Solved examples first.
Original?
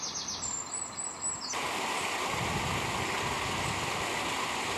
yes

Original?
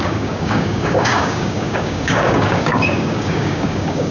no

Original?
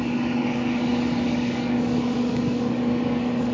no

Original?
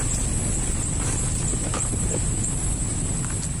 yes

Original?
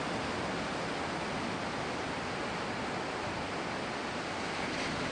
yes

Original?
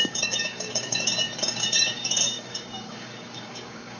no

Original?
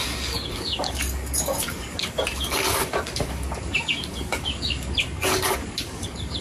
no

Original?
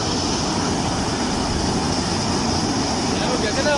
yes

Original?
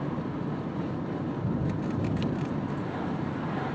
yes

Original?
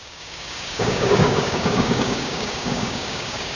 no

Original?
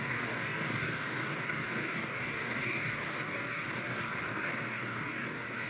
no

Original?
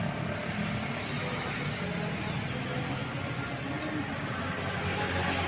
yes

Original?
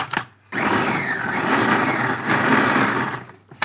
yes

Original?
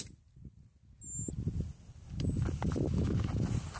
yes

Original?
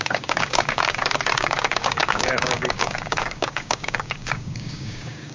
no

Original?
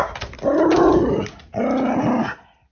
yes